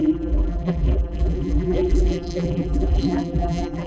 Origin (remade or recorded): remade